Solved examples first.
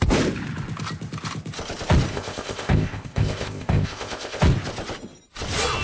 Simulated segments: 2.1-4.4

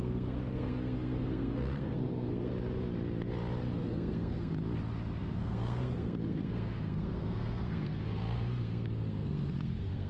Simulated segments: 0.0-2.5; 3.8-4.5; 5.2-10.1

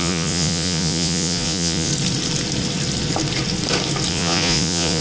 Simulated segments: 0.0-1.9; 4.1-5.0

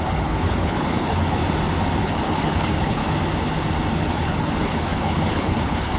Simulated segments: 0.0-1.4; 2.0-3.0; 3.9-6.0